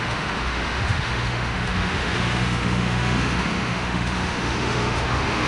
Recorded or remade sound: remade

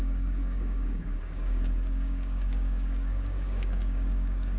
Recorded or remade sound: remade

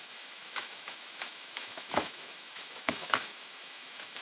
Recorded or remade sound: remade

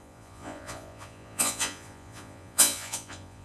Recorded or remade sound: remade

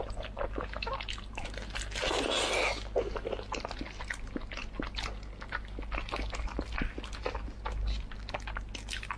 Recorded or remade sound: recorded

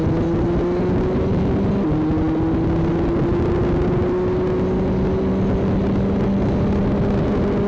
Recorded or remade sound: recorded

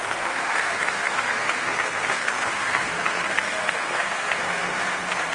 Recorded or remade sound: remade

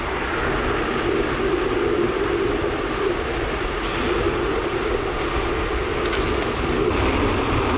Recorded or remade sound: recorded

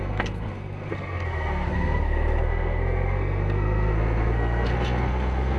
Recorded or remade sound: remade